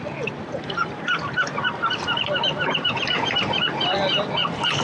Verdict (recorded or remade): recorded